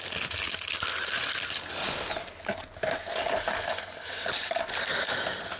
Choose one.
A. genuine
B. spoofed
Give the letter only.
A